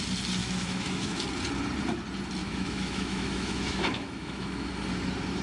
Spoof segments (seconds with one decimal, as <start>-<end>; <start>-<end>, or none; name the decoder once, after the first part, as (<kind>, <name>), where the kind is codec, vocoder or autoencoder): 0.4-1.2 (autoencoder, DAC-VAE); 2.4-4.7